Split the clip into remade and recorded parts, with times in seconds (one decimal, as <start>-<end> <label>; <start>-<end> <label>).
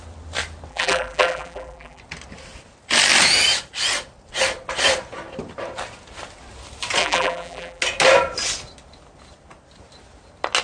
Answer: 0.0-0.7 recorded; 0.7-2.0 remade; 2.0-7.0 recorded; 7.0-7.8 remade; 7.8-10.6 recorded